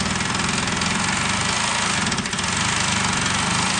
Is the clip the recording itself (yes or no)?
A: yes